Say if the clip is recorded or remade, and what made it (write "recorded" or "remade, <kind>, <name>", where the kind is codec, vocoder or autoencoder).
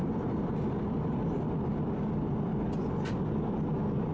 recorded